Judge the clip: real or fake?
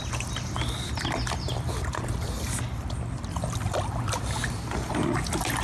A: real